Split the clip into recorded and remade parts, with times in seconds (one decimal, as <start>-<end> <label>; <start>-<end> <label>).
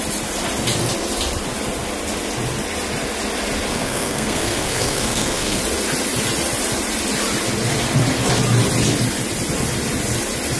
0.0-3.7 recorded; 3.7-5.6 remade; 5.6-10.6 recorded